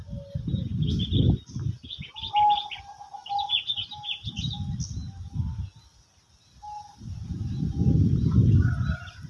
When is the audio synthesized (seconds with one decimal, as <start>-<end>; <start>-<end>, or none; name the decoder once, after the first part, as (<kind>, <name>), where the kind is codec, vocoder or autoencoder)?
none